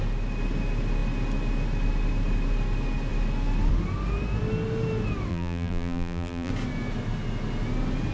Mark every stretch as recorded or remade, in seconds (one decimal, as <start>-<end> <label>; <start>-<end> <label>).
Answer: 0.0-5.3 recorded; 5.3-6.5 remade; 6.5-8.1 recorded